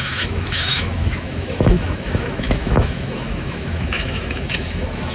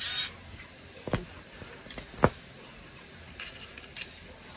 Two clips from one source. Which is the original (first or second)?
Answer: second